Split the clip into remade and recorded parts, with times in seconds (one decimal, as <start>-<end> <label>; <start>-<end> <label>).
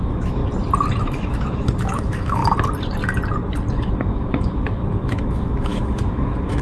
0.0-0.4 remade; 0.4-1.0 recorded; 1.0-2.4 remade; 2.4-3.7 recorded; 3.7-6.6 remade